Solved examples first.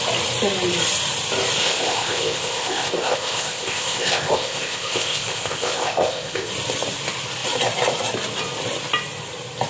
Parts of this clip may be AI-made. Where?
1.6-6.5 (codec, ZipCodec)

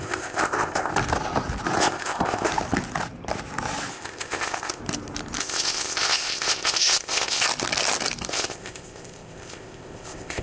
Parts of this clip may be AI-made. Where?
0.0-0.9 (codec, ZipCodec); 1.8-2.5; 3.9-4.8; 5.4-7.4; 8.3-10.4